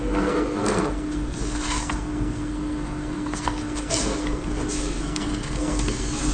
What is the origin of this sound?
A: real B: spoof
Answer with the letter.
B